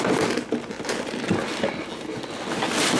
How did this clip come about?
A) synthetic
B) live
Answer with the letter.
B